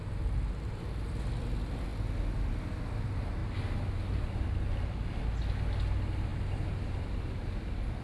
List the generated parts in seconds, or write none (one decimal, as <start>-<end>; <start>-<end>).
none